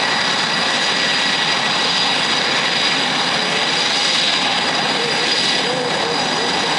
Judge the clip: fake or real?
real